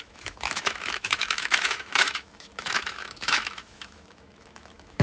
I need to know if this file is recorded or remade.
remade